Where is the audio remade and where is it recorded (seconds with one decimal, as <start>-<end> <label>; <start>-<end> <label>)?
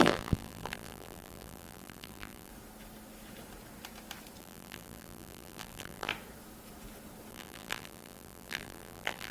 0.0-2.5 remade; 2.5-4.4 recorded; 4.4-6.1 remade; 6.1-7.3 recorded; 7.3-9.3 remade